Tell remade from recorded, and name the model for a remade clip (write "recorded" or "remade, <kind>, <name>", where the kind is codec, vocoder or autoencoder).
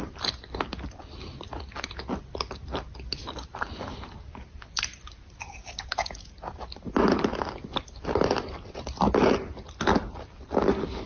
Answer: recorded